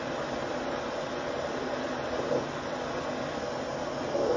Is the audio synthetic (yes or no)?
no